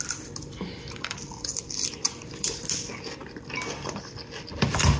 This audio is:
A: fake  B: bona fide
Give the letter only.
B